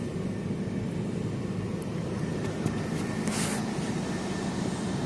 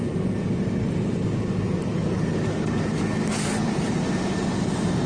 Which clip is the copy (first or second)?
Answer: first